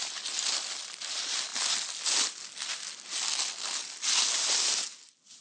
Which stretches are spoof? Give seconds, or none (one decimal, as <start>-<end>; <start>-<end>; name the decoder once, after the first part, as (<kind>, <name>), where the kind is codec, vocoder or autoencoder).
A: none